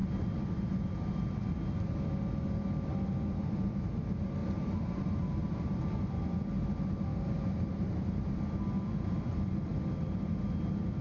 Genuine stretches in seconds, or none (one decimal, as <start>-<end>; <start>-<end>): 1.1-4.4; 5.8-7.1; 8.4-11.0

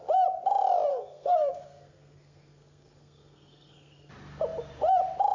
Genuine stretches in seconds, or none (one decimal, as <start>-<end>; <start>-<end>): 0.0-0.9; 4.1-5.3

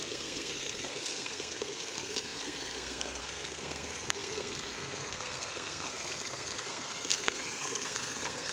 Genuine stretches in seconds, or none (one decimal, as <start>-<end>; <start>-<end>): none

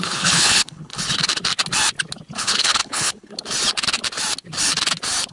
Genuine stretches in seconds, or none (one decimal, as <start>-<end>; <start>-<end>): 0.9-2.4; 3.3-5.3

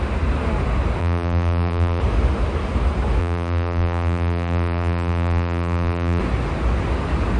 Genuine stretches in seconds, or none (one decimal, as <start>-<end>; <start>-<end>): 0.0-1.0; 2.0-3.2; 6.2-7.4

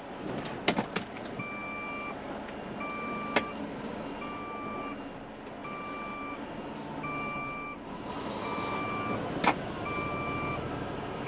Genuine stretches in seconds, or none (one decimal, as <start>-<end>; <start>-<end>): 0.0-11.3

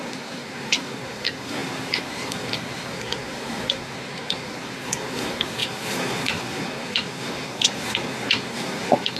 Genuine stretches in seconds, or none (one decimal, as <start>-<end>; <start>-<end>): none

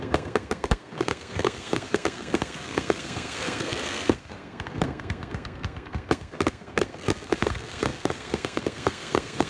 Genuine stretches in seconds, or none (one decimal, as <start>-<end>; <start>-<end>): none